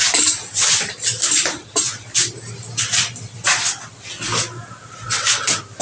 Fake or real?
real